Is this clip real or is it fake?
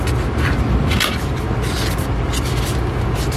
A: real